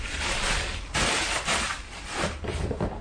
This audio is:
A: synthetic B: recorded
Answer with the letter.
B